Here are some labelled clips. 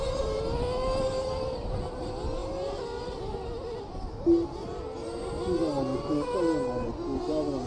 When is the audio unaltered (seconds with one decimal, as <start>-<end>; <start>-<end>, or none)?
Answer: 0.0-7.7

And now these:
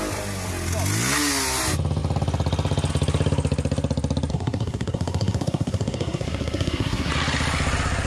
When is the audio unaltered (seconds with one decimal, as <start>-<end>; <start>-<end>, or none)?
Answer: 0.0-4.3; 7.1-8.1

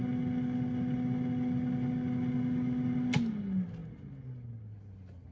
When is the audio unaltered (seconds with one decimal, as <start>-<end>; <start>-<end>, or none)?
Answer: 0.0-5.3

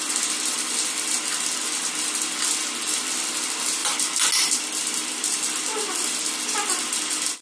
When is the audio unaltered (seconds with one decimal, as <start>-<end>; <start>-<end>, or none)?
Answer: 0.0-7.4